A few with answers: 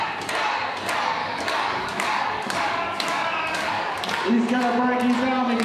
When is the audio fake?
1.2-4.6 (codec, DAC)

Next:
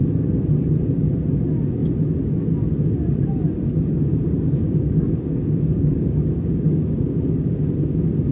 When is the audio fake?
4.1-7.7 (codec, DAC)

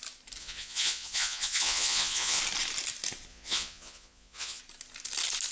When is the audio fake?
0.4-2.4 (vocoder, Vocos); 3.3-4.6

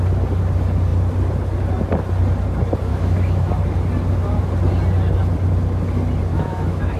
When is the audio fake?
2.9-3.5 (autoencoder, DAC-VAE); 6.3-7.0

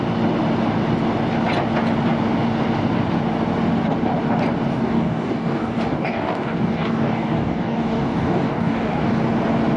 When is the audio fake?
4.7-9.2 (codec, DAC)